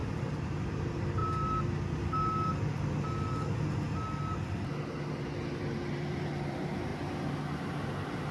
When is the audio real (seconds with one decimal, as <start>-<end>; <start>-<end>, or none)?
0.0-0.7; 1.2-5.1; 6.9-8.3